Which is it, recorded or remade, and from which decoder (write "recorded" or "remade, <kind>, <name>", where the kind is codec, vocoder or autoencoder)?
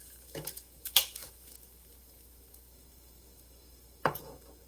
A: remade, autoencoder, DAC-VAE